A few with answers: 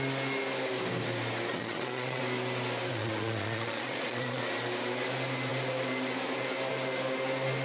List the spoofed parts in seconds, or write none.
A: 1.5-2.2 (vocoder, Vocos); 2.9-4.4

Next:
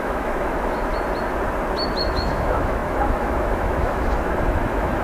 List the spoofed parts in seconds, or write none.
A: 0.0-0.9 (autoencoder, DAC-VAE); 2.0-5.0

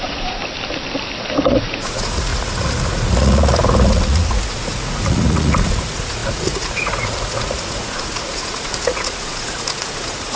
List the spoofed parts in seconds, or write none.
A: 0.0-0.4 (vocoder, Vocos); 1.5-10.4

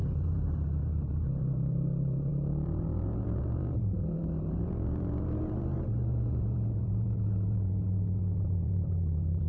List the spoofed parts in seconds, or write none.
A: 0.0-9.5 (vocoder, BigVGAN v2)

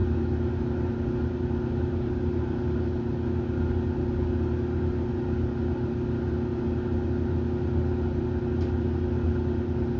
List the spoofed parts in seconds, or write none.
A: none

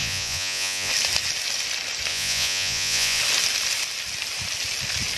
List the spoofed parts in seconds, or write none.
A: 0.0-0.9 (vocoder, Vocos); 2.1-3.2

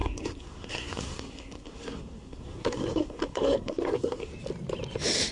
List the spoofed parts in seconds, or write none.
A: 0.0-4.3 (codec, SNAC)